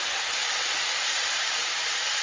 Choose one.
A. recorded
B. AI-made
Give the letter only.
A